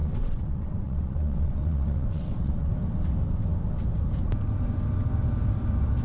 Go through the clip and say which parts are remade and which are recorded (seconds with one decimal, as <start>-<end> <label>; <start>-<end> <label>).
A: 0.0-2.7 remade; 2.7-6.0 recorded